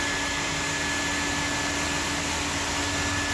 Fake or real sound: real